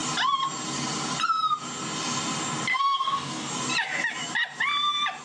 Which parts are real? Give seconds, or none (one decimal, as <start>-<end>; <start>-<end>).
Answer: 0.0-2.7; 3.5-5.2